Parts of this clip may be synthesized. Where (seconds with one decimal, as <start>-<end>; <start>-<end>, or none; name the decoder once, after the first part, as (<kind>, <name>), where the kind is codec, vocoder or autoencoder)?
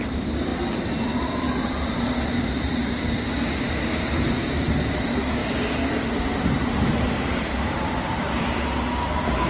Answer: 0.0-0.5 (vocoder, BigVGAN v2); 1.6-5.4; 6.1-9.5